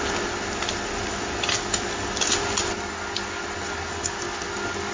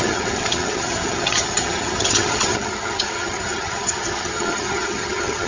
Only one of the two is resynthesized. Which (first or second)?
second